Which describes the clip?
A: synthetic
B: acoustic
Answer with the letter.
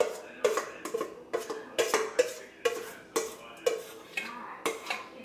B